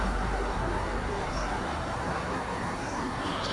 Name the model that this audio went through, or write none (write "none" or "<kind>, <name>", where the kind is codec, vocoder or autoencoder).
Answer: codec, SNAC